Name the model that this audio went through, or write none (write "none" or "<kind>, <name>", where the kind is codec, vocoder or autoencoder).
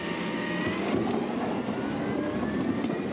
none